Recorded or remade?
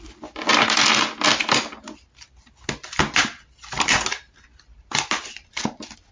recorded